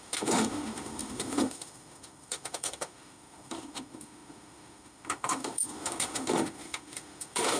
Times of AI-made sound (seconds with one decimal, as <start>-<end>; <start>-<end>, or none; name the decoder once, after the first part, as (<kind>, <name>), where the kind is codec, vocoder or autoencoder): 0.0-7.6 (autoencoder, DAC-VAE)